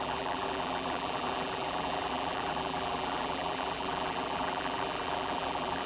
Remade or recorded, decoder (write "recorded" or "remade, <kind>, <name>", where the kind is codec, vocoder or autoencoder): remade, vocoder, BigVGAN v2